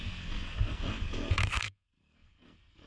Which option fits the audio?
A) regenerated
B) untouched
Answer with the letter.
A